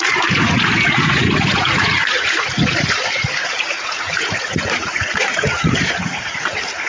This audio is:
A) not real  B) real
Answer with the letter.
A